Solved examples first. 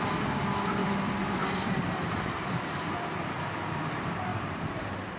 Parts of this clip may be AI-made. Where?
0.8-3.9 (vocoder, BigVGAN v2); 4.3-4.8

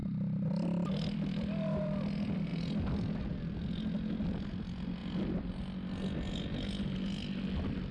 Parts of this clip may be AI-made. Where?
0.0-2.1 (vocoder, BigVGAN v2)

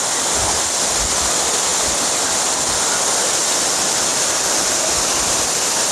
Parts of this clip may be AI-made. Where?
1.7-2.6 (vocoder, BigVGAN v2); 4.1-4.9